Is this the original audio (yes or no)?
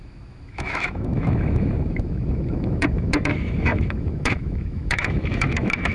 no